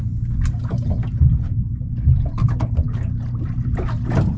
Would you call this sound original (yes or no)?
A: yes